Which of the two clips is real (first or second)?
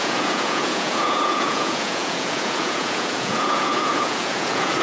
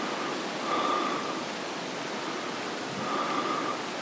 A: second